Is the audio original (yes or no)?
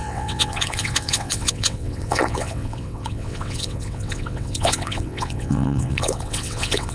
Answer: no